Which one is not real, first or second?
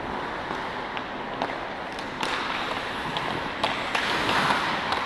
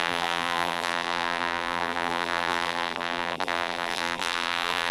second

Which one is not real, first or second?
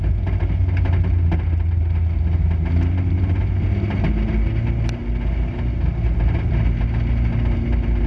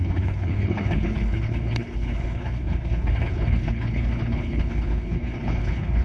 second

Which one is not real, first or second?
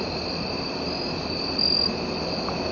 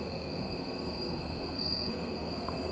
second